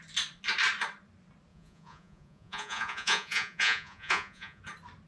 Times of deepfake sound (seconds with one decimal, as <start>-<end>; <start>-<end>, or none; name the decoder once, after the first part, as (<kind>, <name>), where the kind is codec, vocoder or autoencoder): 1.5-4.6 (vocoder, Vocos)